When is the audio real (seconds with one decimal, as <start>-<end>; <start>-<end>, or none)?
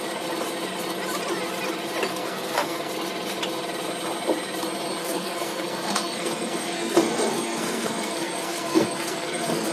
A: 0.0-2.1; 2.9-5.0